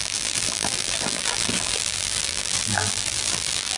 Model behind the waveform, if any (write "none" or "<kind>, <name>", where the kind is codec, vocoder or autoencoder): vocoder, BigVGAN v2